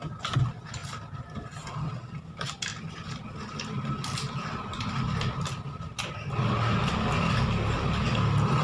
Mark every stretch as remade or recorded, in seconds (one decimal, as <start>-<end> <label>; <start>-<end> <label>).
0.0-8.6 recorded